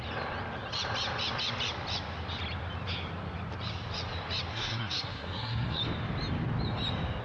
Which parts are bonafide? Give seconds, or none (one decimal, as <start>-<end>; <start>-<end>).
0.0-4.5; 5.8-7.2